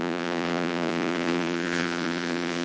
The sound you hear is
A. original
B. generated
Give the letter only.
B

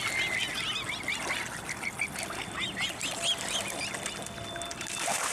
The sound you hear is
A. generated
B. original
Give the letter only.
B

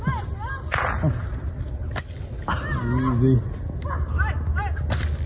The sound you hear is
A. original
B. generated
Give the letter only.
A